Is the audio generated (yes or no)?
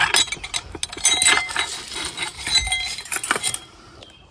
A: no